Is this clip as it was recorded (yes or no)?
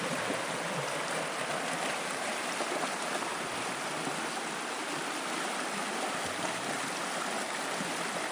yes